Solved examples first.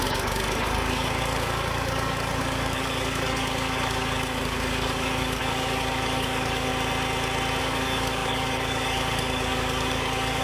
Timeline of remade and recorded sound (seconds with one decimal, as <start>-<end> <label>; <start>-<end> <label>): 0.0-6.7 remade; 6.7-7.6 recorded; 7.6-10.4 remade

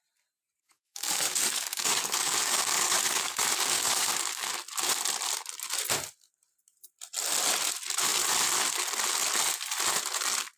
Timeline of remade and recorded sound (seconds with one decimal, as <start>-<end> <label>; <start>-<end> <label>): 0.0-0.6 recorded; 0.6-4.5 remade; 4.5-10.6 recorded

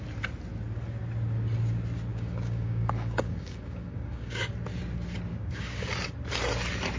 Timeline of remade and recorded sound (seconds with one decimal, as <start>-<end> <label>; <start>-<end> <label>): 0.0-2.1 recorded; 2.1-4.5 remade; 4.5-5.3 recorded; 5.3-5.9 remade; 5.9-7.0 recorded

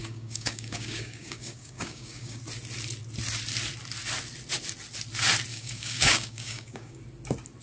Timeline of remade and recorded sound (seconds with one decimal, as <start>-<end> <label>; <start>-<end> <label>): 0.0-2.4 remade; 2.4-5.5 recorded; 5.5-7.0 remade; 7.0-7.6 recorded

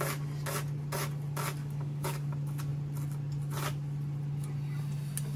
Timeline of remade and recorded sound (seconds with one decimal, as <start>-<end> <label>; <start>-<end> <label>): 0.0-1.6 recorded; 1.6-2.3 remade; 2.3-5.4 recorded

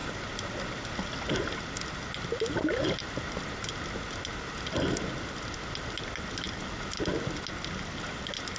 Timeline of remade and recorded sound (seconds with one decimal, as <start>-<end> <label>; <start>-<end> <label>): 0.0-8.6 recorded